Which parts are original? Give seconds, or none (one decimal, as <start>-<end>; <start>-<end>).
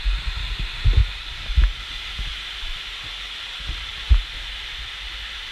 0.0-1.0; 1.8-5.5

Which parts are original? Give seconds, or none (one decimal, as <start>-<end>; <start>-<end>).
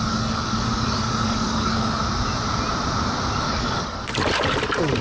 2.0-3.4; 4.1-5.0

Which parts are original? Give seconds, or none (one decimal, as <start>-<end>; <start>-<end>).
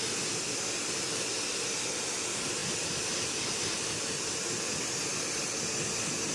0.0-6.3